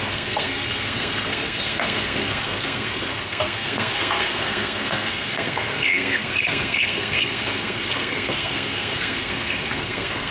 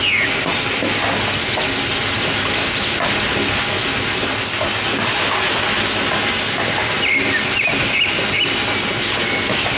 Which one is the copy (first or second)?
first